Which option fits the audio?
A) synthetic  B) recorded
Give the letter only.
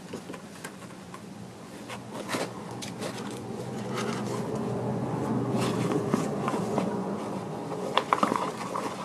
A